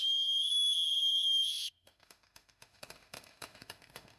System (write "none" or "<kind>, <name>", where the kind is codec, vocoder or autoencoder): autoencoder, DAC-VAE